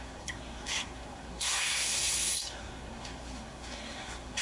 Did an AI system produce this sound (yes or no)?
yes